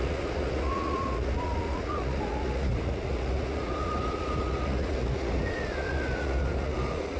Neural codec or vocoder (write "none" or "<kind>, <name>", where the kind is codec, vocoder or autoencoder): vocoder, Vocos